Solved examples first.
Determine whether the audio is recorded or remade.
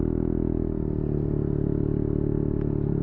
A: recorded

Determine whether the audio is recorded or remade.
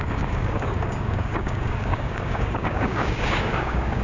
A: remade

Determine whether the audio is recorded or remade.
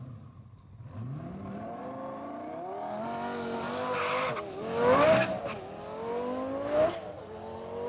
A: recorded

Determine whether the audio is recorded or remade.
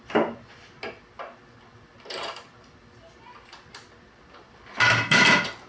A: recorded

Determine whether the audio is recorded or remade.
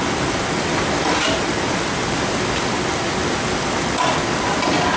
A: recorded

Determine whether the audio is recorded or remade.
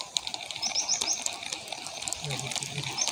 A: recorded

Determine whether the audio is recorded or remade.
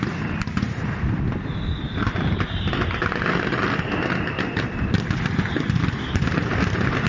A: recorded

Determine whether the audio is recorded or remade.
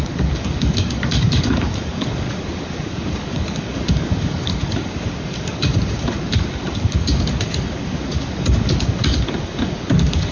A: remade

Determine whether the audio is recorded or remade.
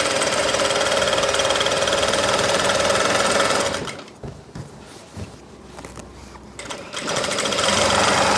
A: recorded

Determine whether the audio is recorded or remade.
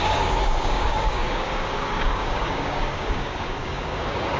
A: remade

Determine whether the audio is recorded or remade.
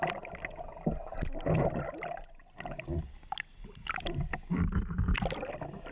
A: recorded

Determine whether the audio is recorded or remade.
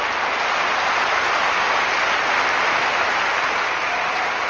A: recorded